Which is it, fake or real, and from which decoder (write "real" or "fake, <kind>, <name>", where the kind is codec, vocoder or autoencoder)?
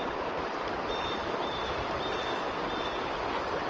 real